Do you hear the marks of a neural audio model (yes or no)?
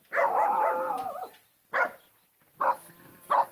no